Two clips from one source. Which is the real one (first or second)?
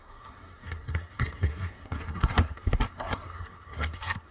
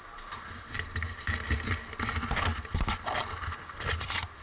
second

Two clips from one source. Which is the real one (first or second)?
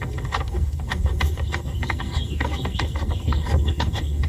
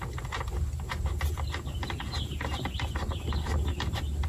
second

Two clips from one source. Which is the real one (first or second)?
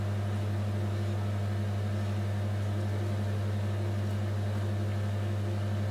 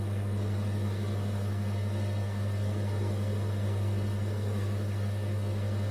first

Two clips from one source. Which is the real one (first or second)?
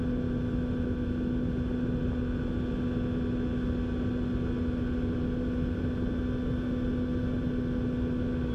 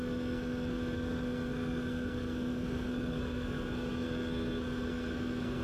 first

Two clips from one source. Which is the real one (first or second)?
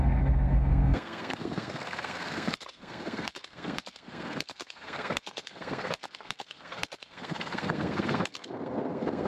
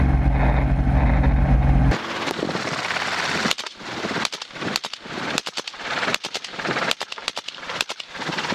second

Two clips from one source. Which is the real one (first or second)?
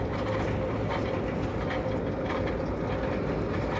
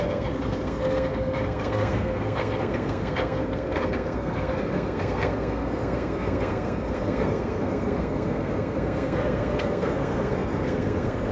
first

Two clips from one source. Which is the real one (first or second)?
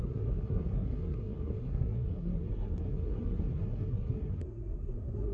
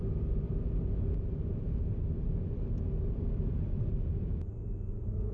second